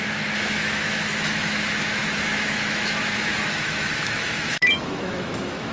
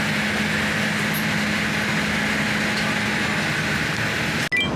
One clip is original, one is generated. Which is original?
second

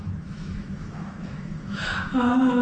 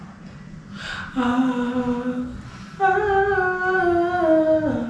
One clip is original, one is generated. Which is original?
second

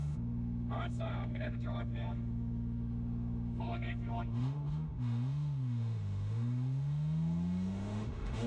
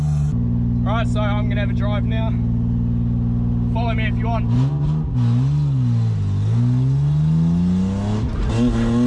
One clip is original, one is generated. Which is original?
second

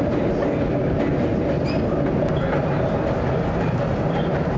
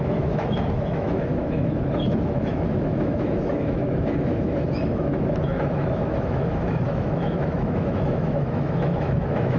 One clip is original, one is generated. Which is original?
first